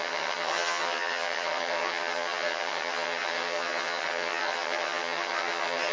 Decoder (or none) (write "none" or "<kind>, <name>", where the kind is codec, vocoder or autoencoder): vocoder, HiFi-GAN